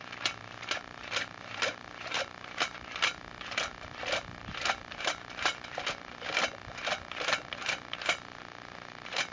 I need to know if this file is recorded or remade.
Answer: recorded